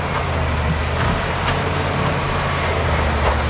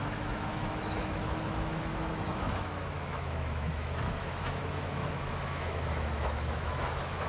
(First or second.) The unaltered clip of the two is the first